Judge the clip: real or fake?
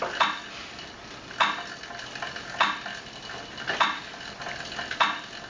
real